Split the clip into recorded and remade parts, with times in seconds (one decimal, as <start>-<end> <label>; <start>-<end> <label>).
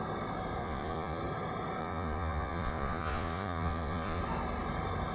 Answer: 0.0-0.6 recorded; 0.6-1.2 remade; 1.2-1.8 recorded; 1.8-4.2 remade; 4.2-5.1 recorded